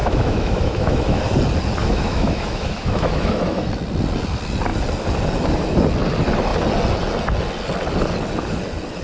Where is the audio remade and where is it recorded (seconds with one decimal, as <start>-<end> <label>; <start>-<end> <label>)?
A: 0.0-1.2 remade; 1.2-1.8 recorded; 1.8-3.7 remade; 3.7-9.0 recorded